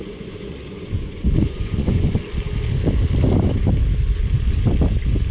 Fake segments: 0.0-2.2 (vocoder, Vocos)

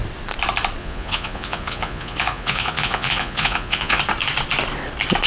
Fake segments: 0.8-4.0 (vocoder, Vocos)